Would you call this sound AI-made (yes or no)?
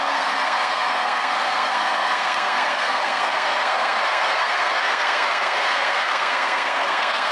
yes